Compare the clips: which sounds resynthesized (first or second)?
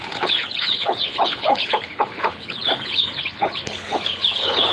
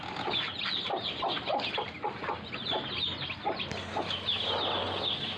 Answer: first